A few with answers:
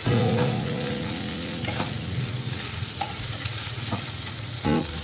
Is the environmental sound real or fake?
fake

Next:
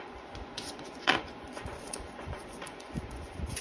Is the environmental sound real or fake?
fake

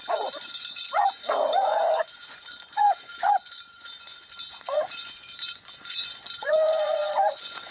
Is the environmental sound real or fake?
fake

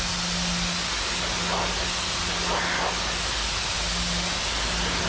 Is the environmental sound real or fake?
real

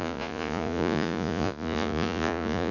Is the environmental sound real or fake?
fake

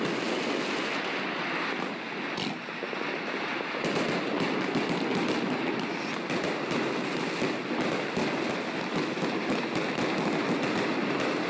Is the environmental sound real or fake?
real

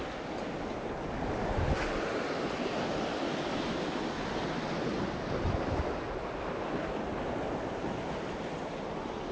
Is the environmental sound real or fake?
real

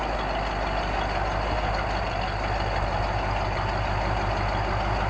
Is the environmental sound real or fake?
real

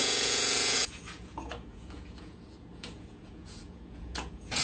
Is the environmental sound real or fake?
fake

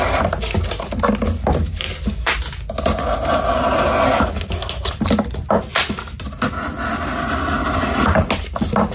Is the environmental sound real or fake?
real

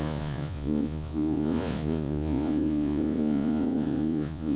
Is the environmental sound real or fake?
fake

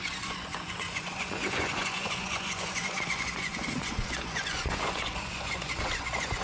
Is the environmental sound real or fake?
fake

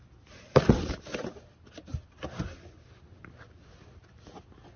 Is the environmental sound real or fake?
real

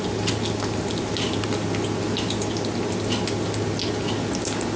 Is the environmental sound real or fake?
real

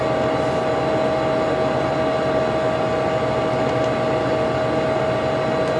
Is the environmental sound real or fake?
real